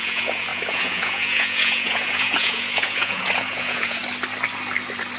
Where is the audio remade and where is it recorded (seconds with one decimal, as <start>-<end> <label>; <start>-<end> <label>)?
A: 0.0-4.0 remade; 4.0-5.2 recorded